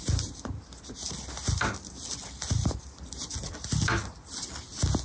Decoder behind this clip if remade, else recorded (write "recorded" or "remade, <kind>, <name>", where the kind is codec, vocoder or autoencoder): recorded